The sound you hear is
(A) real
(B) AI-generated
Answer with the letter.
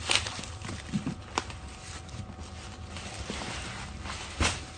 A